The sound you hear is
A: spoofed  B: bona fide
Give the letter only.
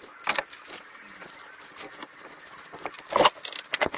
B